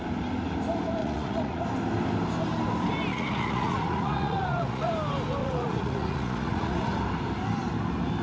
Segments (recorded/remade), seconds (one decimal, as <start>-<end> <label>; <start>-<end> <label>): 0.0-1.0 recorded; 1.0-1.6 remade; 1.6-3.1 recorded; 3.1-4.9 remade; 4.9-5.4 recorded; 5.4-6.9 remade; 6.9-8.2 recorded